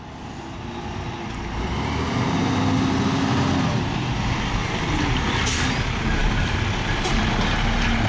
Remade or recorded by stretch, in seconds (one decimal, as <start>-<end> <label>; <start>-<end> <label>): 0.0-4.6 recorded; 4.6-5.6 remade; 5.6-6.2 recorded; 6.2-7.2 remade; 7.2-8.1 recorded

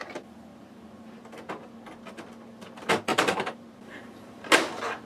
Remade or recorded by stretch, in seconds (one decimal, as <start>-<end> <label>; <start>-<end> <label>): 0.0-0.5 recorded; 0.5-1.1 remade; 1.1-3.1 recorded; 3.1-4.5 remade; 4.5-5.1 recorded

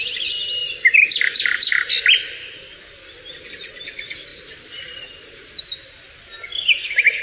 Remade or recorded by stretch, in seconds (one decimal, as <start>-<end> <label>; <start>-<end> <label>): 0.0-4.3 recorded; 4.3-5.6 remade; 5.6-7.2 recorded

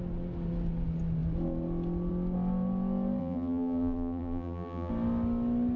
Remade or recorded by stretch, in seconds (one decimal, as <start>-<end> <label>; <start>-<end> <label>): 0.0-3.2 recorded; 3.2-4.9 remade; 4.9-5.8 recorded

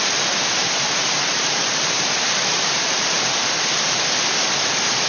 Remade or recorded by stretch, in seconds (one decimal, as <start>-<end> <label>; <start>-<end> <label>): 0.0-0.6 recorded; 0.6-3.7 remade; 3.7-5.1 recorded

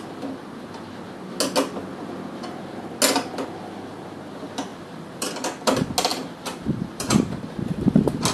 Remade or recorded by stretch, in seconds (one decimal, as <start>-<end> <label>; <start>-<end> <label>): 0.0-4.7 recorded; 4.7-5.3 remade; 5.3-6.1 recorded; 6.1-7.8 remade; 7.8-8.3 recorded

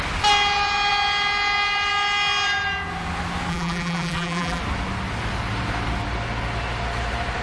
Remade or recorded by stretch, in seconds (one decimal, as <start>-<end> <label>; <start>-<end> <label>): 0.0-3.5 recorded; 3.5-4.6 remade; 4.6-7.4 recorded